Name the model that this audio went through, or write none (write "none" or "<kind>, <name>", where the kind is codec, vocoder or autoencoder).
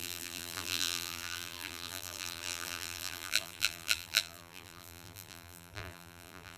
vocoder, BigVGAN v2